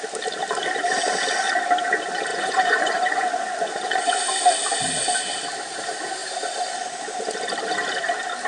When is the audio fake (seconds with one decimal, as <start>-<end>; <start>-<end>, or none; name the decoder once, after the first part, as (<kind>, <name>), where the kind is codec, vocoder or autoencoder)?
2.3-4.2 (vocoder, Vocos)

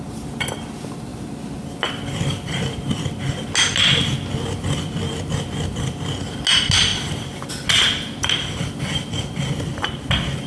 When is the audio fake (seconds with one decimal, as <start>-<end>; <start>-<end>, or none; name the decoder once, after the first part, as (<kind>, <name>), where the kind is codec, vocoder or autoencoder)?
none

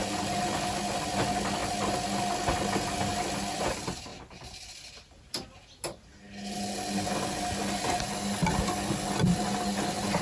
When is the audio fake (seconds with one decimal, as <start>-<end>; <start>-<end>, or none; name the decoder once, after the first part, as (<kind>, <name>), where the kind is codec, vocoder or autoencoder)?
none

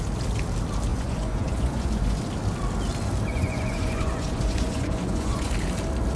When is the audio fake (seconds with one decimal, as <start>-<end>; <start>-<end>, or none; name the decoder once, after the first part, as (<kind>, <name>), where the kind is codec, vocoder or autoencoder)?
0.9-2.2 (vocoder, Vocos); 3.3-5.5

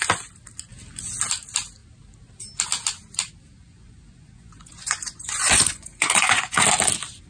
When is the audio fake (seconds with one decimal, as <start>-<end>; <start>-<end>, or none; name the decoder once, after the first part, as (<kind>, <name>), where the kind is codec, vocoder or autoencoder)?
3.6-6.6 (vocoder, Vocos)

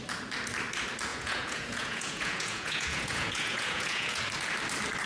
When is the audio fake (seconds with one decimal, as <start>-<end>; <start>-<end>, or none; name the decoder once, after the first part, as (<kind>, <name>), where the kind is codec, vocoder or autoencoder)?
1.1-4.2 (vocoder, Vocos)

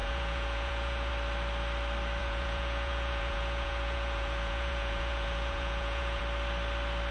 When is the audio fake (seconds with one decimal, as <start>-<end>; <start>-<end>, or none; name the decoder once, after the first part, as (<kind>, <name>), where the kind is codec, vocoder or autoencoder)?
0.0-1.1 (vocoder, Vocos); 2.2-6.2